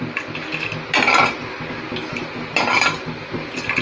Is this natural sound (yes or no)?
yes